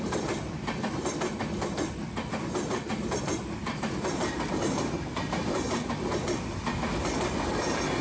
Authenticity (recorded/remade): recorded